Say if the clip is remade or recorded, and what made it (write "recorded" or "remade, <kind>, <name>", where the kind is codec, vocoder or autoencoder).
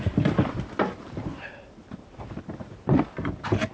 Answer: recorded